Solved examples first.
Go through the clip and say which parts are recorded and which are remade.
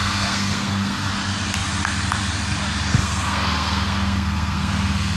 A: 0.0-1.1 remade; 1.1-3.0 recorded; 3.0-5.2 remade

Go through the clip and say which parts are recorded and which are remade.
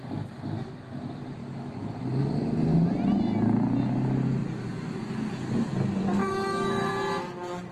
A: 0.0-1.4 recorded; 1.4-2.0 remade; 2.0-6.2 recorded; 6.2-6.9 remade; 6.9-7.7 recorded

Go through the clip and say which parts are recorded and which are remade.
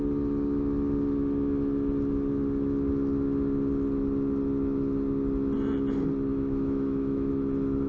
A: 0.0-6.3 recorded; 6.3-7.3 remade; 7.3-7.9 recorded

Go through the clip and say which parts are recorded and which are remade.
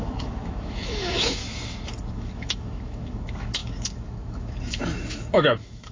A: 0.0-1.4 remade; 1.4-2.1 recorded; 2.1-5.9 remade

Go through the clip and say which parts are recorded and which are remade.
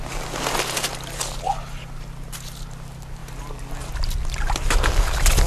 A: 0.0-5.5 recorded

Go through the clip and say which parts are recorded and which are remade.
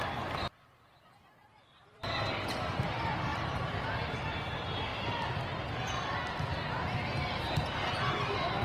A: 0.0-3.3 recorded; 3.3-4.2 remade; 4.2-8.6 recorded